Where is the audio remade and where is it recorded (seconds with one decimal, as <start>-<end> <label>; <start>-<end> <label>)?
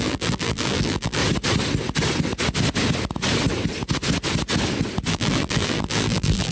0.0-1.2 remade; 1.2-5.1 recorded; 5.1-6.5 remade